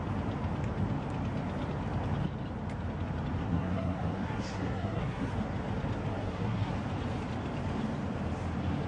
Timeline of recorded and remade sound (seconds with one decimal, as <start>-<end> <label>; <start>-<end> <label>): 0.0-3.4 recorded; 3.4-5.3 remade; 5.3-6.1 recorded; 6.1-6.7 remade; 6.7-8.9 recorded